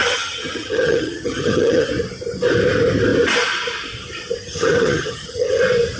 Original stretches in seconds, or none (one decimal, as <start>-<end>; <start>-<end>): 1.9-4.4; 5.6-6.0